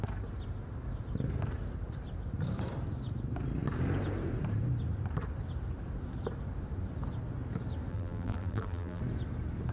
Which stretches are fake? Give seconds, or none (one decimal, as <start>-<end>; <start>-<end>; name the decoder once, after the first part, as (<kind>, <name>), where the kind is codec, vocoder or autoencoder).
7.9-9.0 (vocoder, BigVGAN v2)